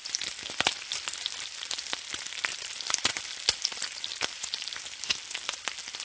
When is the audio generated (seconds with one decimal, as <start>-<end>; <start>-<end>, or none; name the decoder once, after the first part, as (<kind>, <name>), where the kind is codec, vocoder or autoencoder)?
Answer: 4.1-4.8 (vocoder, BigVGAN v2)